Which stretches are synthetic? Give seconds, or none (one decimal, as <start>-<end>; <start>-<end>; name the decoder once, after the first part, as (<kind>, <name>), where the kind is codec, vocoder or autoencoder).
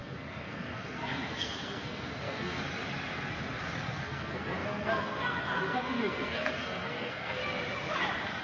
0.0-2.6 (codec, SNAC); 4.0-7.4